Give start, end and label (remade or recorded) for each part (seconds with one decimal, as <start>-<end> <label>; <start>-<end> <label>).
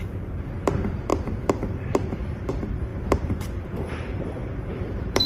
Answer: 0.0-5.3 remade